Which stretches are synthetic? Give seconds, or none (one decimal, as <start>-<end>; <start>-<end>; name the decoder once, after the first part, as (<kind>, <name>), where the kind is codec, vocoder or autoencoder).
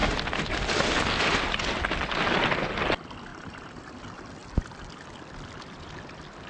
3.3-4.0 (vocoder, BigVGAN v2)